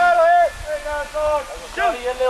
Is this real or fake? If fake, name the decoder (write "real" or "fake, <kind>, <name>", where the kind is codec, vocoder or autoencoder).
real